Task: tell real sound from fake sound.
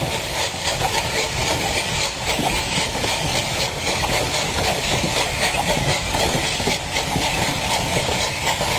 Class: fake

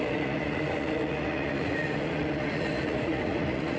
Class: fake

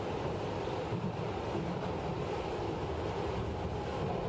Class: real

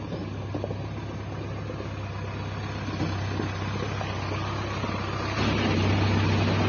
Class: real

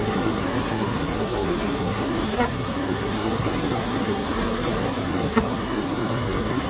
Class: fake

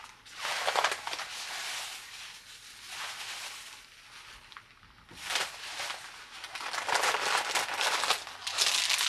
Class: real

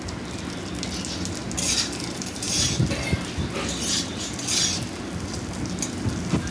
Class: real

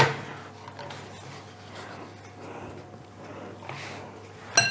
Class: real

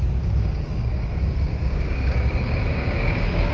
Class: fake